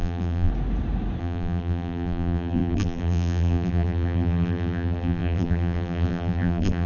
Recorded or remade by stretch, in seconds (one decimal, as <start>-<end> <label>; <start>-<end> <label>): 0.0-0.5 remade; 0.5-1.2 recorded; 1.2-6.9 remade